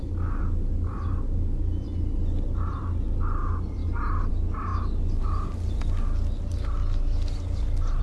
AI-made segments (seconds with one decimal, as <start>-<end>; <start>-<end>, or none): none